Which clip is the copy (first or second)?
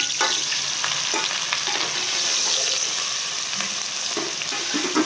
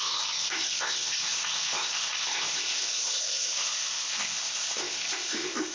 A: second